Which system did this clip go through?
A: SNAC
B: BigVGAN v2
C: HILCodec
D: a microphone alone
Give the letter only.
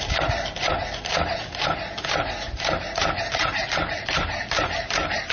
D